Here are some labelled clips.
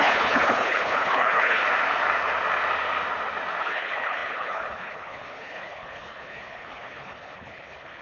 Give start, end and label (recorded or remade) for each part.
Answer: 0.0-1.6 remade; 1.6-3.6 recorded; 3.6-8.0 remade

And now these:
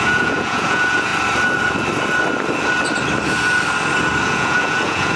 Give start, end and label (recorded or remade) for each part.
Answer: 0.0-1.1 remade; 1.1-4.2 recorded; 4.2-5.2 remade